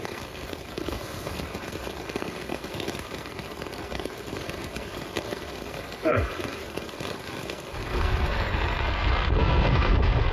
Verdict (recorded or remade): remade